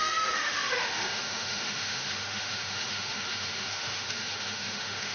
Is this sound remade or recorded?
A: remade